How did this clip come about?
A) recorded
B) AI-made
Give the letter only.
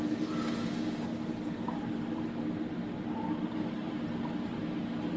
A